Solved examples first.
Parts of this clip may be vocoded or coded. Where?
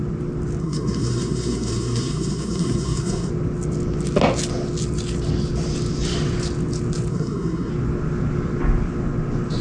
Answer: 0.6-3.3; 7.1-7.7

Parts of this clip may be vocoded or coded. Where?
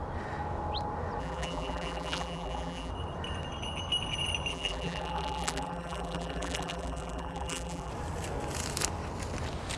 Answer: 1.2-2.9; 4.5-7.9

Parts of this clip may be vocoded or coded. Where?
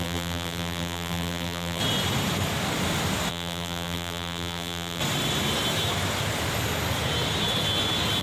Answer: 0.0-1.8; 3.3-5.0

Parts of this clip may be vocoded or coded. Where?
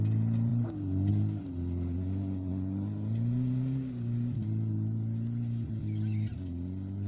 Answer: none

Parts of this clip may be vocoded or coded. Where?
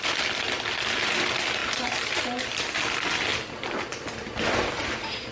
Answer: 1.6-2.6